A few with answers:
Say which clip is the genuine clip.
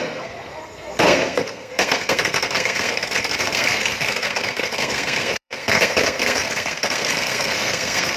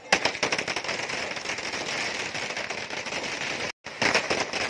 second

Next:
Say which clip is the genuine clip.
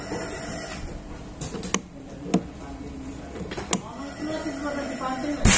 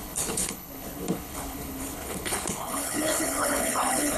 first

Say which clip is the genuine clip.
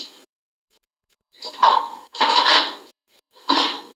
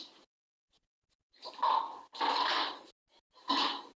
second